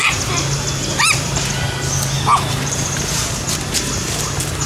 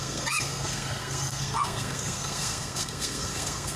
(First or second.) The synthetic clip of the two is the second